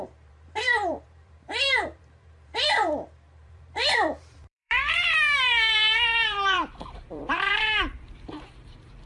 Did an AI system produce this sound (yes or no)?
yes